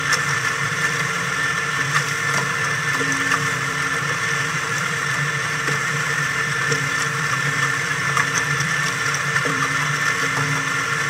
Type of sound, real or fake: fake